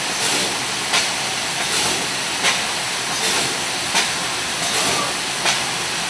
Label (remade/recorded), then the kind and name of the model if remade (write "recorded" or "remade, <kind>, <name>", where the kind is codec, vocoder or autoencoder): recorded